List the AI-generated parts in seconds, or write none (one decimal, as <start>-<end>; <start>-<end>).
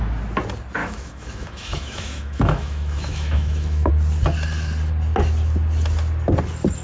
0.8-3.9